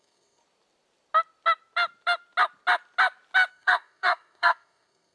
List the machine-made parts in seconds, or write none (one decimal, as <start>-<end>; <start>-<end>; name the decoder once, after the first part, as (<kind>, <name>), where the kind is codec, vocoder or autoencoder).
0.0-0.4 (codec, SNAC); 3.5-5.1